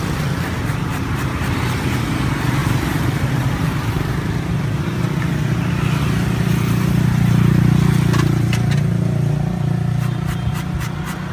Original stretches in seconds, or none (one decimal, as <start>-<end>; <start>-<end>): 0.0-2.6; 5.0-11.3